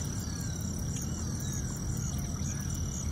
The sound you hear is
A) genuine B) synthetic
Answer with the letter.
A